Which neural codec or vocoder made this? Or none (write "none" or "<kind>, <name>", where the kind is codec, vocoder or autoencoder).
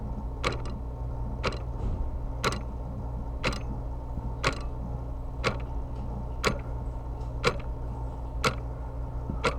none